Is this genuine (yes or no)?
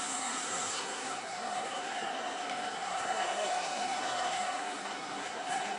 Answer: no